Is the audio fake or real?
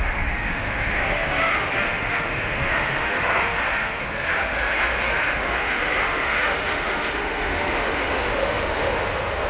fake